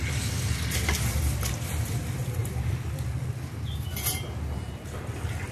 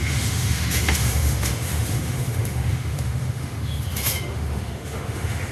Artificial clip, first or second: second